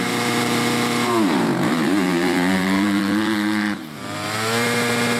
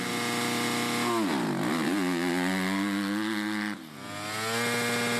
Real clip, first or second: second